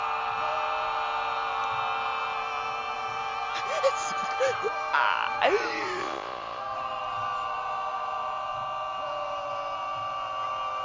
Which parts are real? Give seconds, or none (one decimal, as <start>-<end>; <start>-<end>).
0.0-6.0; 6.6-10.8